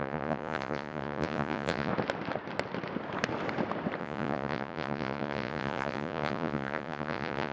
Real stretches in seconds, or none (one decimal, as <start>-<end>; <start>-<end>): 1.9-4.0